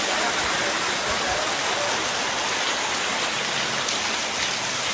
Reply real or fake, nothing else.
real